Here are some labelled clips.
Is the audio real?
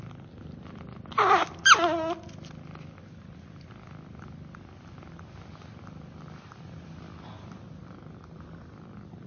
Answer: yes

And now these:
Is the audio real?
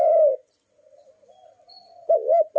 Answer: yes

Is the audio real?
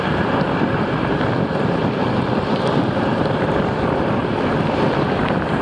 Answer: no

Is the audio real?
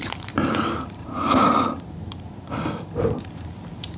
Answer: no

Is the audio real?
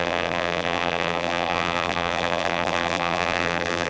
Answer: no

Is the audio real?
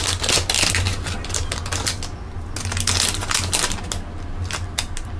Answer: yes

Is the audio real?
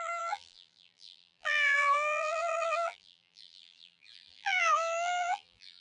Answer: no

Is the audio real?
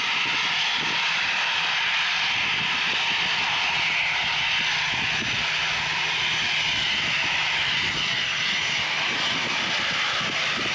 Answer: yes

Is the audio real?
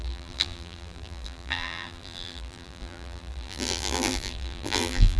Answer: no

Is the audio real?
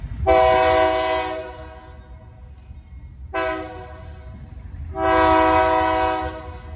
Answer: yes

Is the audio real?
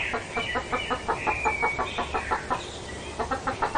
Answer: yes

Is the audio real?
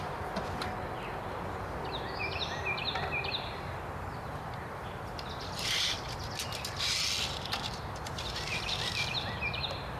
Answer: no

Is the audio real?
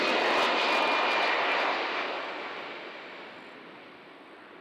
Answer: yes